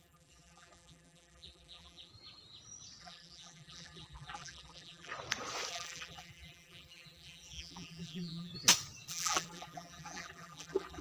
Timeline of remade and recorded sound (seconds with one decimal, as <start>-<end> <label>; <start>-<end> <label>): 0.0-2.1 remade; 2.1-3.0 recorded; 3.0-5.1 remade; 5.1-5.7 recorded; 5.7-8.5 remade; 8.5-9.1 recorded; 9.1-11.0 remade